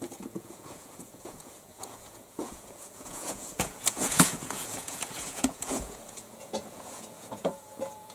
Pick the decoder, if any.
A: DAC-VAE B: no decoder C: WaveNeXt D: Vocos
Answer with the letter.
D